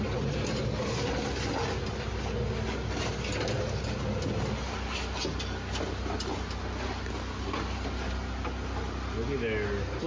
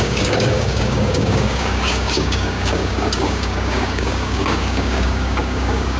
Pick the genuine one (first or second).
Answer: first